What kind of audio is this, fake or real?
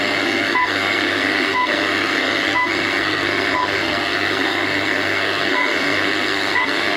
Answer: fake